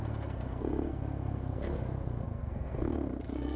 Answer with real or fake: fake